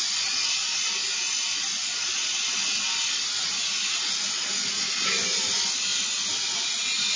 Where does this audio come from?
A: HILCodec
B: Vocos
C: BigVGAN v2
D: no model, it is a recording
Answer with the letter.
D